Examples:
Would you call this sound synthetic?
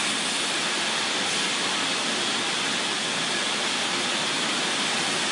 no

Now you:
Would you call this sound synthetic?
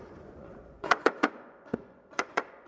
yes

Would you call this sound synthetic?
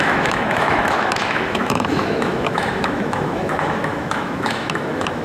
yes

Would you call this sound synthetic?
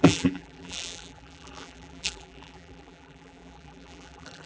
yes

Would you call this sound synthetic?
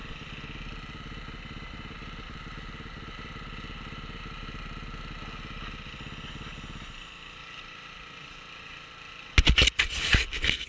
no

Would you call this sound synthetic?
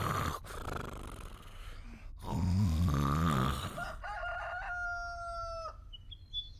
no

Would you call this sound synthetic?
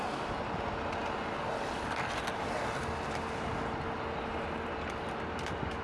no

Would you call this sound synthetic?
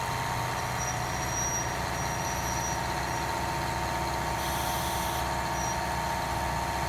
no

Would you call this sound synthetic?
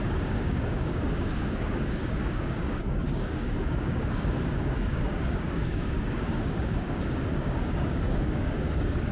yes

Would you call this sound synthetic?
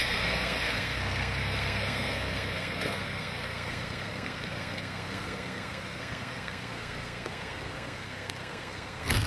yes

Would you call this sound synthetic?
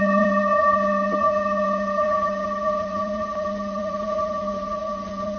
yes